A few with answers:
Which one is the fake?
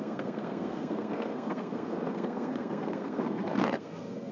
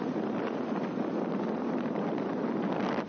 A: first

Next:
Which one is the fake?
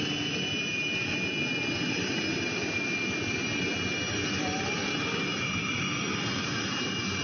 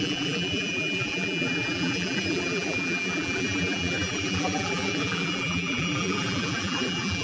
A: second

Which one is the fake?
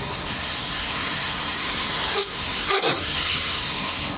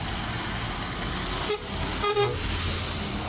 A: first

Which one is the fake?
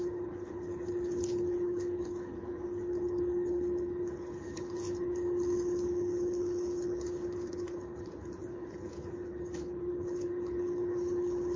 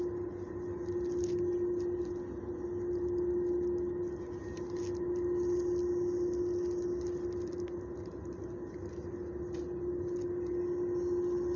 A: first